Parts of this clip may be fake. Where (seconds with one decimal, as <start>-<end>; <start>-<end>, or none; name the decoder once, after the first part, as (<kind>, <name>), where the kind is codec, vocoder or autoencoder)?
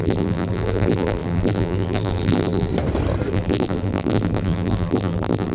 0.0-2.7 (vocoder, BigVGAN v2); 3.3-5.5